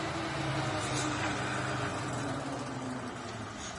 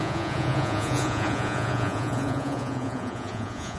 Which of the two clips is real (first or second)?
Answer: first